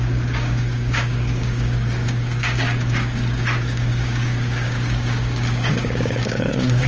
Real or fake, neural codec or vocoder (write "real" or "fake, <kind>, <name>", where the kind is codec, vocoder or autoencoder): fake, codec, DAC